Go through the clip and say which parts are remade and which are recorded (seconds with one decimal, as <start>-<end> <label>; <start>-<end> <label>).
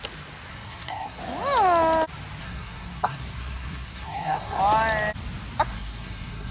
0.0-0.5 recorded; 0.5-1.2 remade; 1.2-2.4 recorded; 2.4-4.6 remade; 4.6-5.7 recorded; 5.7-6.5 remade